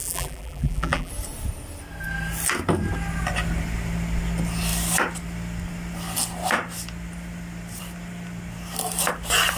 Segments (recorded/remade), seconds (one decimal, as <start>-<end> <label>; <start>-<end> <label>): 0.0-1.1 remade; 1.1-9.6 recorded